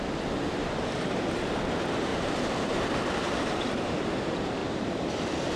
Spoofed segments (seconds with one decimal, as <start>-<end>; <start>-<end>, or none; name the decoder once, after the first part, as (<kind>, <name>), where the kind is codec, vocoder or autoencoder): 0.6-1.5 (vocoder, BigVGAN v2); 2.1-3.6; 4.6-5.1